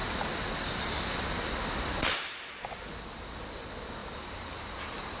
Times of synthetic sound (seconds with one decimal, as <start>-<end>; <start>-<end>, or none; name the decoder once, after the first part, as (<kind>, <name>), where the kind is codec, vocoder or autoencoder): 4.0-4.6 (vocoder, BigVGAN v2)